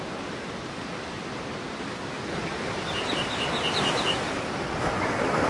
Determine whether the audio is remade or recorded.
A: recorded